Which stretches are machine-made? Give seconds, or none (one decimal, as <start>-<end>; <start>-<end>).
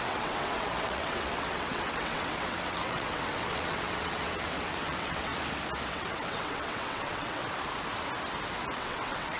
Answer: 0.0-5.3; 5.9-7.4; 8.7-9.4